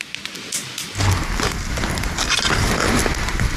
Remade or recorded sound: recorded